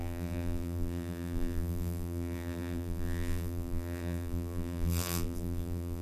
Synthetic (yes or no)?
yes